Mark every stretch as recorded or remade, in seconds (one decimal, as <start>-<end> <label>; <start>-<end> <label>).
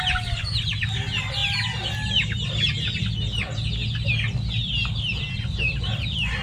0.0-6.4 recorded